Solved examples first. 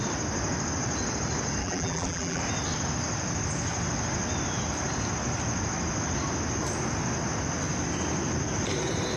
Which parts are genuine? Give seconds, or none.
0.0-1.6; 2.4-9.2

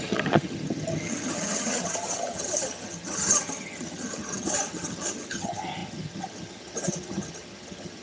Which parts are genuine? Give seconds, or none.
none

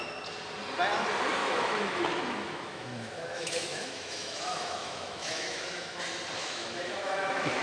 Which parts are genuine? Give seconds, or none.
0.0-1.4; 6.0-6.4